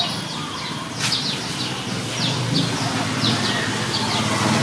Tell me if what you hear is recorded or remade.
recorded